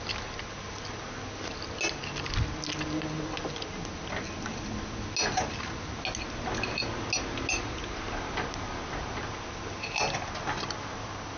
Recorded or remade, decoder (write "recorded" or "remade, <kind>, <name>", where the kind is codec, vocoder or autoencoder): recorded